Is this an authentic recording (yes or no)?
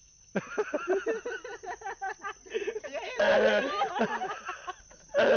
yes